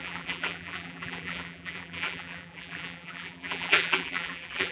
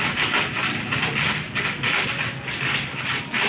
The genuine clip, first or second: second